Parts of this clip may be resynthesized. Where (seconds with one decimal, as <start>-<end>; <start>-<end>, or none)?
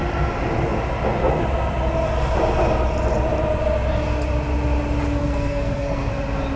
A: 5.2-6.1